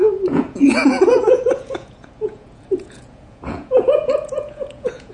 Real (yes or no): no